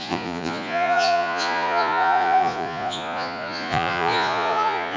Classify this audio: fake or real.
fake